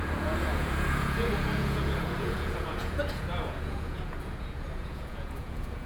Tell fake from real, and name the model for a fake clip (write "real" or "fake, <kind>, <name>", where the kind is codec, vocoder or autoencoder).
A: fake, vocoder, Vocos